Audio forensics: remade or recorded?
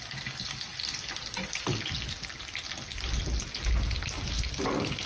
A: recorded